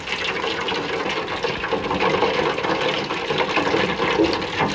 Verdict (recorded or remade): recorded